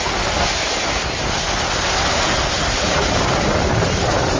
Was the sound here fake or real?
real